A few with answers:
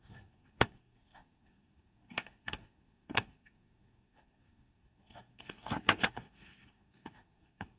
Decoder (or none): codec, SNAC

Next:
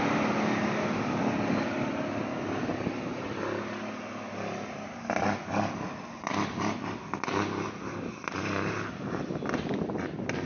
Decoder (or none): none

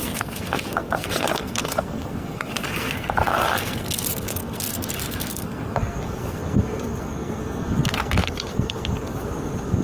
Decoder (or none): codec, SNAC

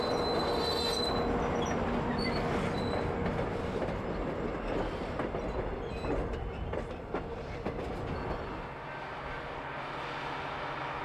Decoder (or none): none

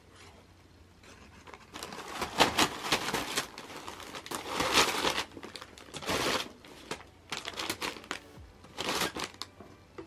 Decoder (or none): none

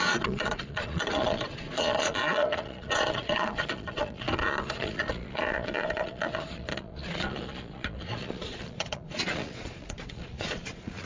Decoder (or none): vocoder, Vocos